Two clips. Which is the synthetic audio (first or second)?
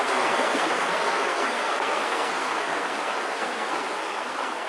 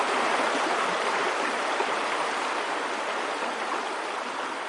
first